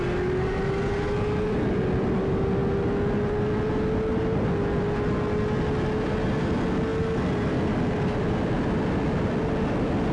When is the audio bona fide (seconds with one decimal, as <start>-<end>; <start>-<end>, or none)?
0.0-10.1